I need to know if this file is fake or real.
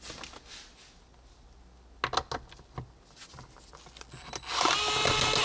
real